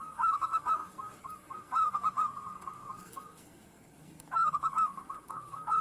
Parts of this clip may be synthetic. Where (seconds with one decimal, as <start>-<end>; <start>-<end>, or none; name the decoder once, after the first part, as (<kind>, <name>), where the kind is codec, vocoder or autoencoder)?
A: 0.0-5.8 (codec, SNAC)